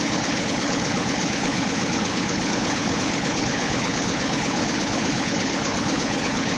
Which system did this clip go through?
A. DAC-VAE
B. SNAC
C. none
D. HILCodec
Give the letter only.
D